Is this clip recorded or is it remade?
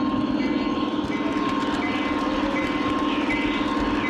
recorded